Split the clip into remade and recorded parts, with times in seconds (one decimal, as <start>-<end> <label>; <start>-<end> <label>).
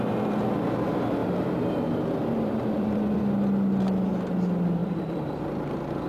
0.0-1.2 recorded; 1.2-3.2 remade; 3.2-4.8 recorded; 4.8-5.4 remade; 5.4-6.1 recorded